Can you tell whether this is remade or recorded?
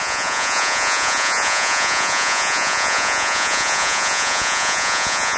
remade